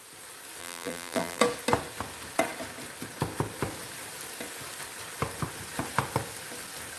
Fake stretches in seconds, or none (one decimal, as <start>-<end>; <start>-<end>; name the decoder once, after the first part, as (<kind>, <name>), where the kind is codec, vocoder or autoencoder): 0.6-1.4 (vocoder, BigVGAN v2)